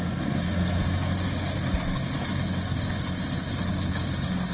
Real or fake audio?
real